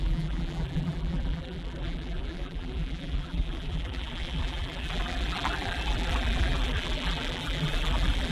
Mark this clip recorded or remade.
remade